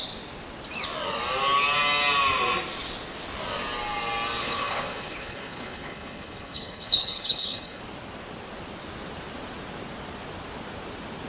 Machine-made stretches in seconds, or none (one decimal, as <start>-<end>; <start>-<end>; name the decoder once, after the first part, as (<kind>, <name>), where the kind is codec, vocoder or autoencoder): 4.4-7.8 (codec, HILCodec)